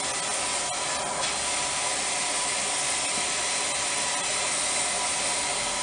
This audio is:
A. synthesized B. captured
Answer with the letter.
B